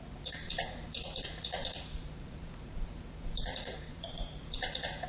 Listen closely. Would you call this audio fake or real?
fake